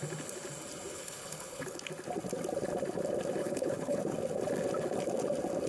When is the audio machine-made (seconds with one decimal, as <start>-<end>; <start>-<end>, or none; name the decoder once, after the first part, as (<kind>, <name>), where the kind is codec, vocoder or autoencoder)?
0.9-1.8 (codec, HILCodec); 3.4-4.0

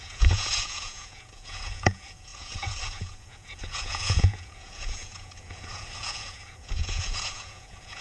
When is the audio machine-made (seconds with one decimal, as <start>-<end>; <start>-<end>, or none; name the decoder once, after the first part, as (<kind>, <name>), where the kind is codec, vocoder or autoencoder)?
0.0-8.0 (vocoder, Vocos)

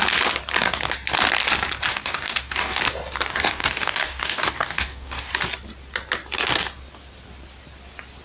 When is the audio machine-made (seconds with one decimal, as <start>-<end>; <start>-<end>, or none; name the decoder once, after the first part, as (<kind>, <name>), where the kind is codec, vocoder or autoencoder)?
1.9-2.8 (codec, DAC); 3.3-5.3

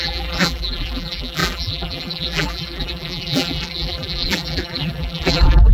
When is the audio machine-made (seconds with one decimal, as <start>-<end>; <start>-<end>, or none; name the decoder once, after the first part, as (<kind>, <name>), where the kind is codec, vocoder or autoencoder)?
0.0-5.7 (vocoder, BigVGAN v2)